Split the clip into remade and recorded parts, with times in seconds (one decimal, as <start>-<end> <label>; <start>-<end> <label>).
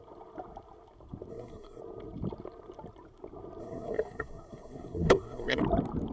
0.0-1.3 recorded; 1.3-1.8 remade; 1.8-3.6 recorded; 3.6-5.6 remade; 5.6-6.1 recorded